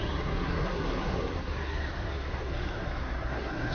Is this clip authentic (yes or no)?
no